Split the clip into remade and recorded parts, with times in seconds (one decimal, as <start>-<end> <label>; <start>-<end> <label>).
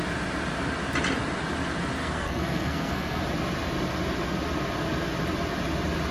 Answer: 0.0-2.0 recorded; 2.0-3.2 remade; 3.2-6.1 recorded